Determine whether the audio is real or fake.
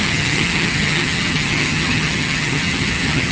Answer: fake